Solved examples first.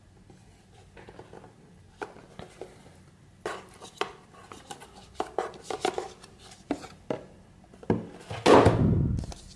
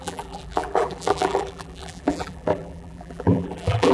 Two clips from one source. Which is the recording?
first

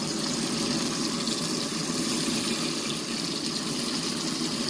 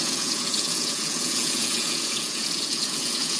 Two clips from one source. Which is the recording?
first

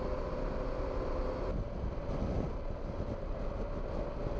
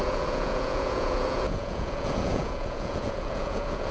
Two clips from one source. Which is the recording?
first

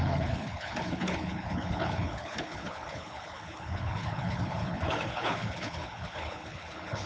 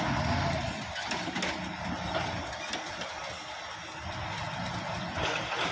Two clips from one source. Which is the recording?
second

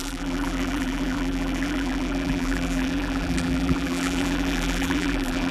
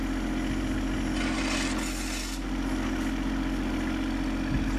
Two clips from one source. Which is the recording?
second